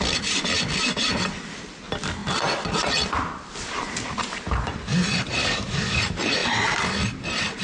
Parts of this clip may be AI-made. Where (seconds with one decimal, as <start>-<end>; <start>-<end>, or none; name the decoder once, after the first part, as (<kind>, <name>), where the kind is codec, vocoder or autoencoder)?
5.4-6.0 (codec, DAC)